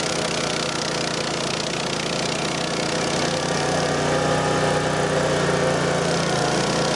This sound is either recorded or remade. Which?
recorded